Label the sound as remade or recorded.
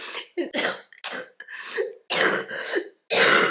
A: recorded